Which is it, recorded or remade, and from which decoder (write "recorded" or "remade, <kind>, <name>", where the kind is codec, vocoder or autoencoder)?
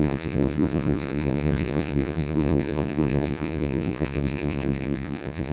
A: remade, vocoder, Vocos